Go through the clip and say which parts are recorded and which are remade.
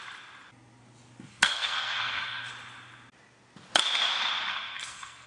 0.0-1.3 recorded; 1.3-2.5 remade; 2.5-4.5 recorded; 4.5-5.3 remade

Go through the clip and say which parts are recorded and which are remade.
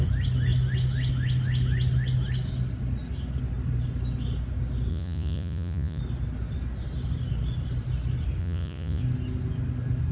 0.0-4.9 recorded; 4.9-6.0 remade; 6.0-8.4 recorded; 8.4-9.0 remade; 9.0-10.1 recorded